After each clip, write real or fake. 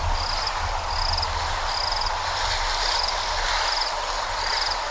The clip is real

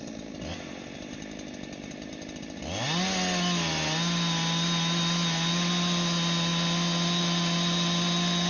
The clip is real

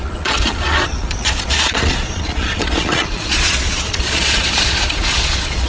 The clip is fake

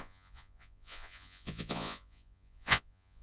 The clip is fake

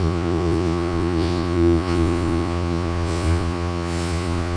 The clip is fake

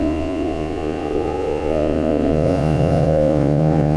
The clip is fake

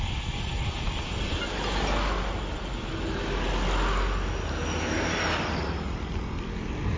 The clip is real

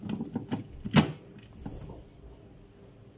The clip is real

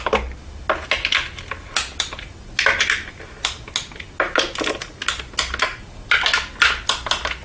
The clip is real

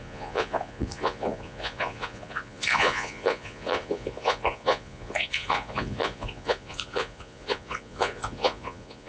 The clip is fake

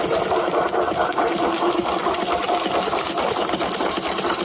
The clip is real